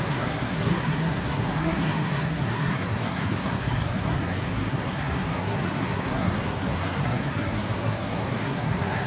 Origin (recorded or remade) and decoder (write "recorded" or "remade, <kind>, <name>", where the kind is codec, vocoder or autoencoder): remade, codec, SNAC